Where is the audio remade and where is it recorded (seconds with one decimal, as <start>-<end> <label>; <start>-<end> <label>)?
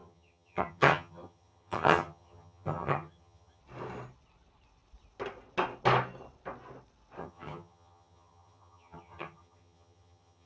0.0-3.6 remade; 3.6-7.2 recorded; 7.2-10.5 remade